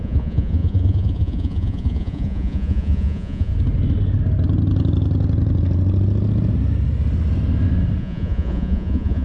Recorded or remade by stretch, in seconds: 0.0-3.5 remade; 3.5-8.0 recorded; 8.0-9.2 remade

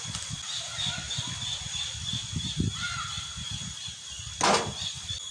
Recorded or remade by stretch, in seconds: 0.0-5.3 recorded

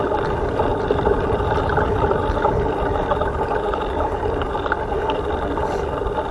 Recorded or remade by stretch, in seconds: 0.0-0.7 recorded; 0.7-4.5 remade; 4.5-6.3 recorded

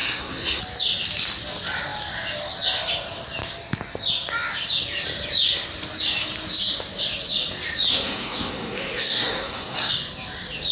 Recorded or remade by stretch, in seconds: 0.0-0.6 remade; 0.6-7.9 recorded; 7.9-9.9 remade; 9.9-10.7 recorded

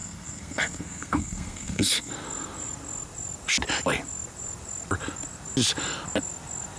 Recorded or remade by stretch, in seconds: 0.0-2.1 remade; 2.1-6.8 recorded